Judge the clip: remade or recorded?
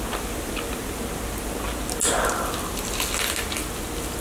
recorded